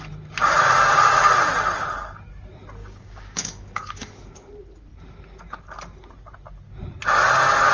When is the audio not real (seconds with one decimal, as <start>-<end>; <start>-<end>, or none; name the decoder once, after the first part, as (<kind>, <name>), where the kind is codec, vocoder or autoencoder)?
2.8-4.1 (codec, DAC)